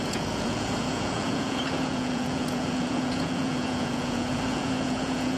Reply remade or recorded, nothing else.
remade